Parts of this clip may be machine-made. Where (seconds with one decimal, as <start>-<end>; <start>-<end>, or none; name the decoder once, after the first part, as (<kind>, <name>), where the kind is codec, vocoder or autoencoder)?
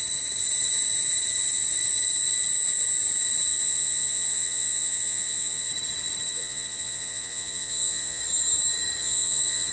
3.5-5.7 (vocoder, Vocos); 6.3-8.2; 9.0-9.7